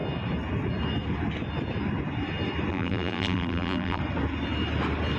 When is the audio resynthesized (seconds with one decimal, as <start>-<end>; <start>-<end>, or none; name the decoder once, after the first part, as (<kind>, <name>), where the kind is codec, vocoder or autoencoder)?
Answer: 2.7-4.0 (vocoder, BigVGAN v2)